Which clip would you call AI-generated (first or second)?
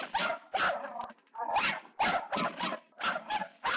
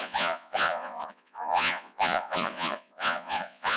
second